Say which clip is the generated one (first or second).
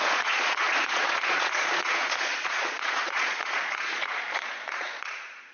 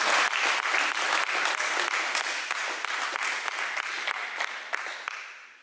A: first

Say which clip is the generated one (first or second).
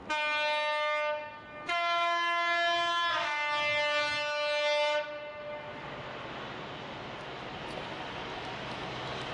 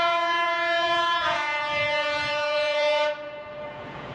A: second